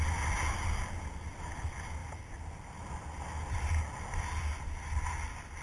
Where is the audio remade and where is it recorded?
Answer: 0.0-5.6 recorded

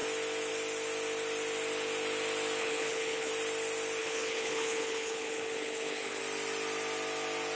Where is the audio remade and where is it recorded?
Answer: 0.0-2.6 recorded; 2.6-3.3 remade; 3.3-4.0 recorded; 4.0-6.2 remade; 6.2-7.6 recorded